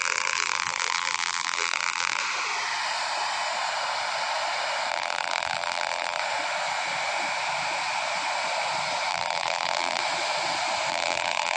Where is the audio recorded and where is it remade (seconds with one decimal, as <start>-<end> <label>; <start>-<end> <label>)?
0.0-2.2 remade; 2.2-4.9 recorded; 4.9-6.2 remade; 6.2-9.1 recorded; 9.1-10.0 remade; 10.0-10.9 recorded; 10.9-11.6 remade